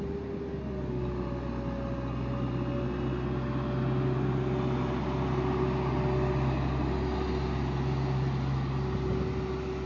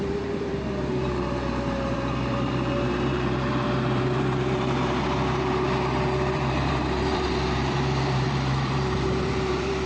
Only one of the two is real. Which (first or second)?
first